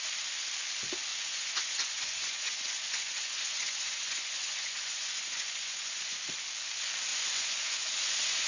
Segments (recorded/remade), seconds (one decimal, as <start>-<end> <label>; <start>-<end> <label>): 0.0-1.1 recorded; 1.1-6.2 remade; 6.2-7.1 recorded; 7.1-8.5 remade